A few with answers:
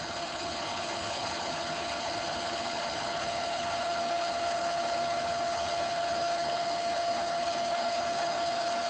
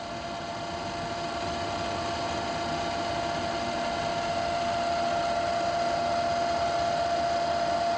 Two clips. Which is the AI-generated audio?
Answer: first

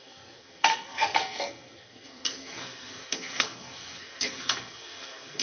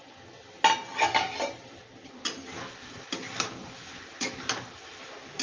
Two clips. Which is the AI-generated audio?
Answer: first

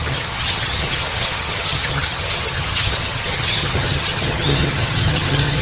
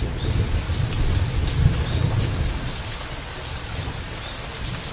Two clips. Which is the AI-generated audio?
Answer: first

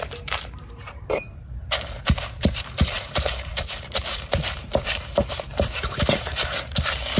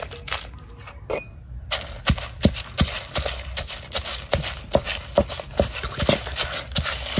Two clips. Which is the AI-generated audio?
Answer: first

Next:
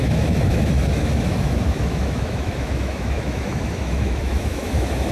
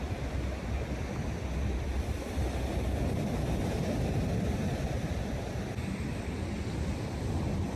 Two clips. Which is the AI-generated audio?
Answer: first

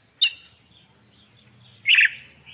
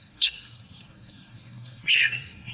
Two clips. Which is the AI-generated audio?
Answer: second